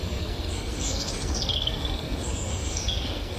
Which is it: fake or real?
fake